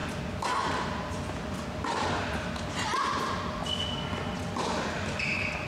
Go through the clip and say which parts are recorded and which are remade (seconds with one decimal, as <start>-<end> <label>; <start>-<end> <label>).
0.0-5.7 recorded